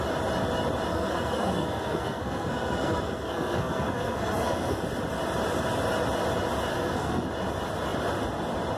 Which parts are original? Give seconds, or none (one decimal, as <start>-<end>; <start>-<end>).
0.0-0.9; 4.8-6.7; 7.3-8.8